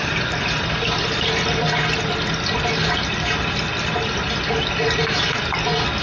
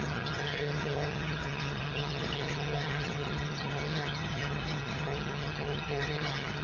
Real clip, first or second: first